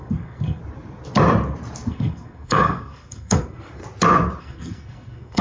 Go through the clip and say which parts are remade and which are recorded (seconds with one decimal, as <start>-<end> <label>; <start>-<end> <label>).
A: 0.0-0.6 remade; 0.6-1.9 recorded; 1.9-3.8 remade; 3.8-4.4 recorded; 4.4-5.4 remade